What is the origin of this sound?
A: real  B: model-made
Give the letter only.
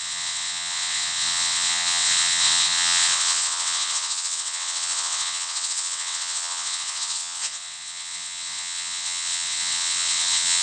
B